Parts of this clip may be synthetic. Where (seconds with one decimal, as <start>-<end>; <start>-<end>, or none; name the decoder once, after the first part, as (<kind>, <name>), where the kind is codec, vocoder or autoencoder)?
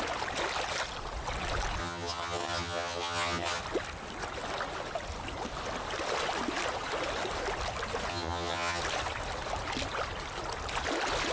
1.8-3.6 (vocoder, HiFi-GAN); 8.1-8.8